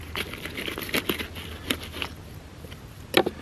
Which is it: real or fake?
real